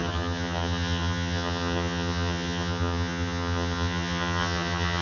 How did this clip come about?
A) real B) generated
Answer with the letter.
B